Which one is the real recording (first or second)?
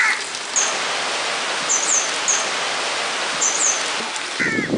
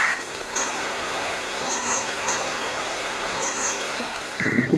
first